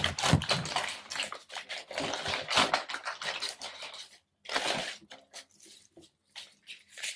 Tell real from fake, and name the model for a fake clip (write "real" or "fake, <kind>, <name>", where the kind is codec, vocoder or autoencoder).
fake, vocoder, BigVGAN v2